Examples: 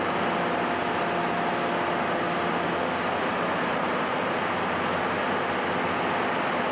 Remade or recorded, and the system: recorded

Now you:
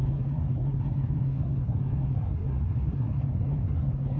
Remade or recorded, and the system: remade, codec, SNAC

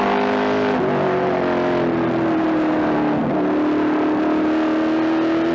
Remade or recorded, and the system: recorded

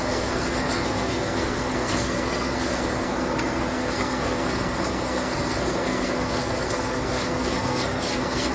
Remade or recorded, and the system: remade, codec, SNAC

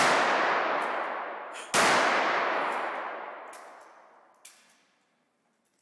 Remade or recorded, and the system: recorded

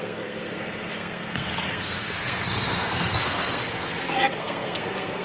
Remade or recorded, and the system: remade, codec, SNAC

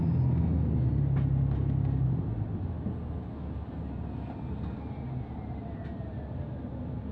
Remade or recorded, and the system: recorded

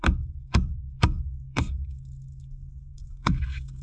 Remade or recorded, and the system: remade, codec, SNAC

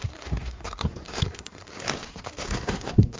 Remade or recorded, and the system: remade, codec, SNAC